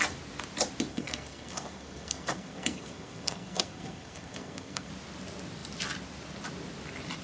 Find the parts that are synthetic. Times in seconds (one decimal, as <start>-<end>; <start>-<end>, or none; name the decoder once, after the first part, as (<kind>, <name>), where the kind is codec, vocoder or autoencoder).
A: 0.9-4.9 (codec, SNAC)